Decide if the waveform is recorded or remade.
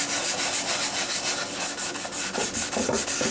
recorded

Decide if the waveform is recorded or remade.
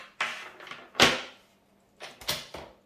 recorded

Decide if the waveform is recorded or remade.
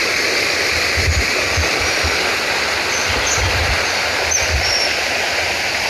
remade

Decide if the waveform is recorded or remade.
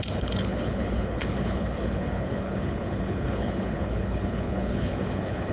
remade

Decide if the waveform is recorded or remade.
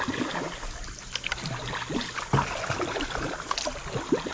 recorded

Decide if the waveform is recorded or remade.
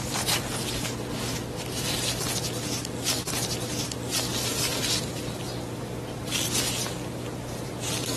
recorded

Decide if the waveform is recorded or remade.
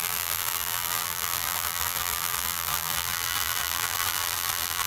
remade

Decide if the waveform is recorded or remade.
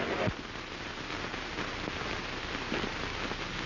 recorded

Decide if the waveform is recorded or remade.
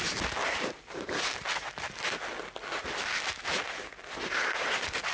recorded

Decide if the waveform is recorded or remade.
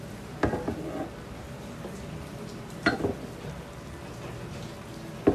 recorded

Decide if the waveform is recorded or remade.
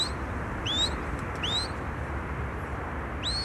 recorded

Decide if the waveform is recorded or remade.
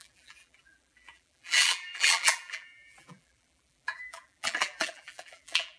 remade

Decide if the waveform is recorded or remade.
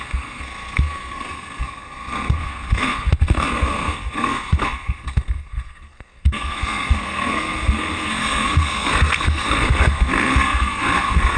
remade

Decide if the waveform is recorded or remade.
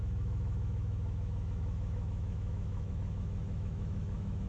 remade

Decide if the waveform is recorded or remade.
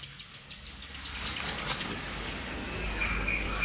remade